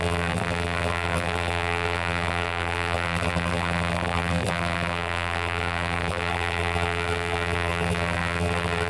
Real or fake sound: fake